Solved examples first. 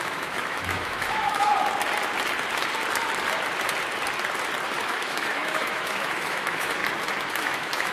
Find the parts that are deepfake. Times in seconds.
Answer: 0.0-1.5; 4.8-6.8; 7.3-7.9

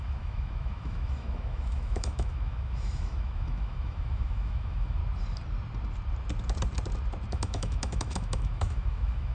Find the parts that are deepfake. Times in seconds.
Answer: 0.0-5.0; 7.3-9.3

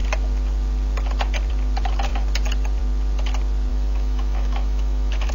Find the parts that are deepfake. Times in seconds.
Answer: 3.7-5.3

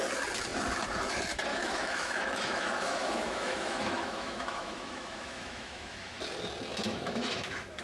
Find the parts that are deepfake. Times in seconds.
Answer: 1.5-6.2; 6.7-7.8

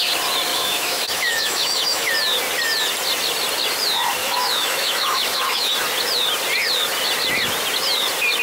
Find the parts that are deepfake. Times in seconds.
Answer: 0.5-2.1; 4.2-5.7

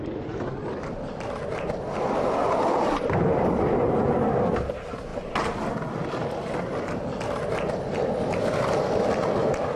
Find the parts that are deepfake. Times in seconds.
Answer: none